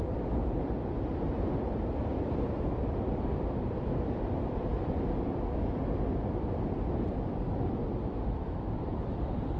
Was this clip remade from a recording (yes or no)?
yes